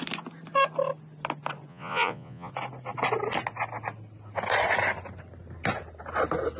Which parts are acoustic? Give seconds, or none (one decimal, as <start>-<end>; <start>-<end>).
0.0-1.7; 2.5-6.6